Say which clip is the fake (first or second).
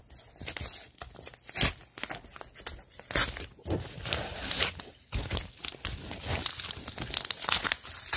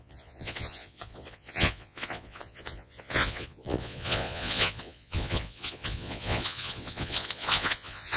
second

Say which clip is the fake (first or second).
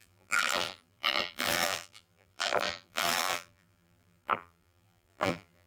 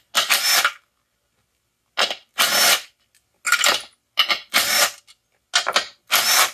first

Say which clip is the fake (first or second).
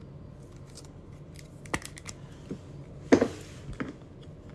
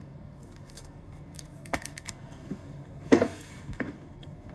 second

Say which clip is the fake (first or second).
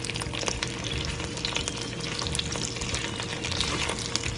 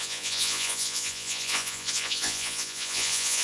second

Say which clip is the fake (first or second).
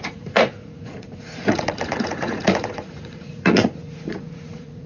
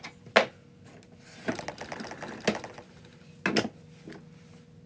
first